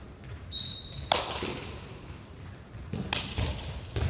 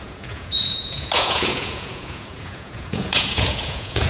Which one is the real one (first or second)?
first